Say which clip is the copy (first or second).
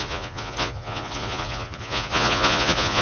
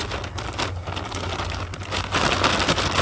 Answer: first